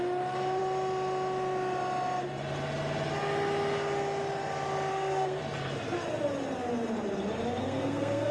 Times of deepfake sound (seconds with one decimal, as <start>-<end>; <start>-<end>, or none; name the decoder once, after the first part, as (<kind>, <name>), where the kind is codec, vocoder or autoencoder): 4.9-5.4 (codec, SNAC); 7.6-8.3